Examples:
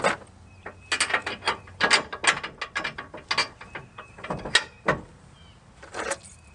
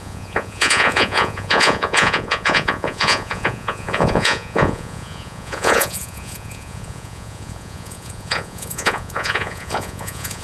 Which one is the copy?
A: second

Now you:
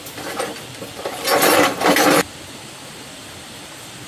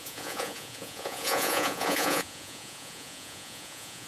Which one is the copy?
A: second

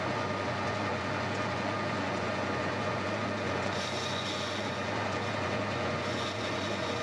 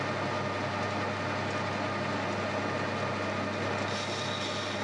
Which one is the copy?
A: first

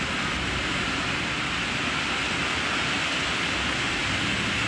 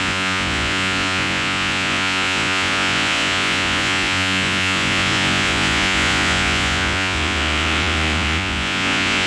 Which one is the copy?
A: second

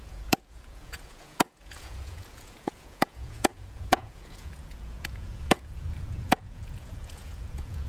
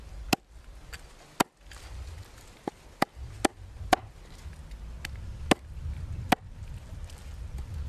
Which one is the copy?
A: first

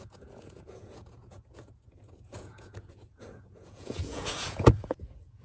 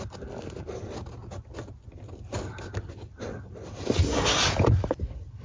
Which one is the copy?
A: first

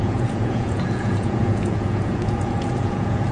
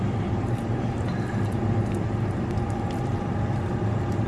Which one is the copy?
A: first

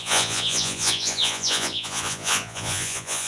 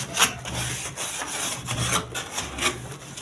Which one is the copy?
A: first